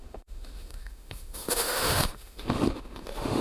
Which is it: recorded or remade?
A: remade